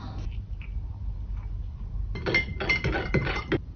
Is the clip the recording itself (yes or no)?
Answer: yes